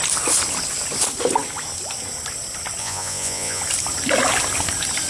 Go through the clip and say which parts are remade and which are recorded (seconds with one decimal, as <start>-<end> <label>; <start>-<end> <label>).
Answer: 0.0-2.8 recorded; 2.8-3.6 remade; 3.6-5.1 recorded